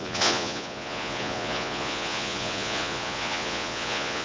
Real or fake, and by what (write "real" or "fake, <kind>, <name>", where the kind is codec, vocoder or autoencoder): fake, vocoder, Vocos